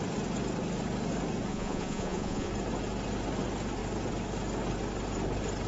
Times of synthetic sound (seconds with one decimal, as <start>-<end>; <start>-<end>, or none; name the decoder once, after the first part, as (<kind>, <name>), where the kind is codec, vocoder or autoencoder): 1.5-2.5 (vocoder, Vocos)